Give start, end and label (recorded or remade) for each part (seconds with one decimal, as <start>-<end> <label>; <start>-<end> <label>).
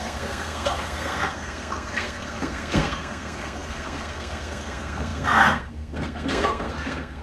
0.0-7.2 remade